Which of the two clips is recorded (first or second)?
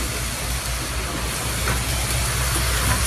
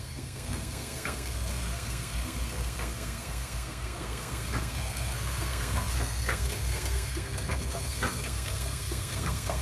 first